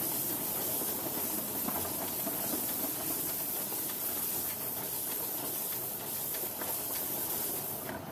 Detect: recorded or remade recorded